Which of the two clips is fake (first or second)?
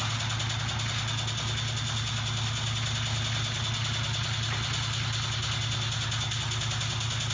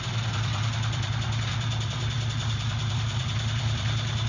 second